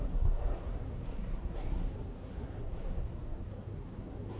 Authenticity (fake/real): fake